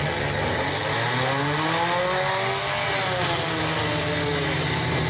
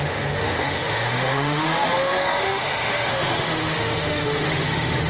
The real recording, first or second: first